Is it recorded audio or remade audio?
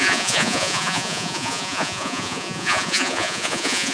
remade